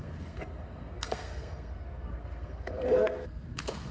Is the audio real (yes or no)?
no